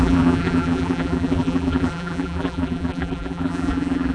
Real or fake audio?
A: fake